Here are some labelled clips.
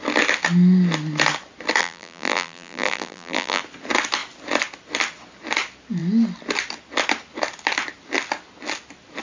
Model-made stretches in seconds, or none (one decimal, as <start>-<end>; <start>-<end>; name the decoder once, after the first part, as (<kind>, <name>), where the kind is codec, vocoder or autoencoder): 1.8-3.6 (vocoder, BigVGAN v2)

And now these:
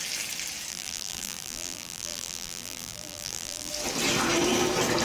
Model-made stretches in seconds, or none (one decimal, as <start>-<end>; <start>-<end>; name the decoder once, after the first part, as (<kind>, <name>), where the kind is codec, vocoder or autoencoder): 0.7-3.7 (vocoder, BigVGAN v2)

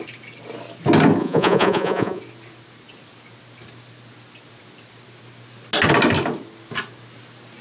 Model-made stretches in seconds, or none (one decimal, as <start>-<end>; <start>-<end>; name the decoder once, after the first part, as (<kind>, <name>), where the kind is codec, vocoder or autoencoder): 1.2-2.2 (vocoder, Vocos)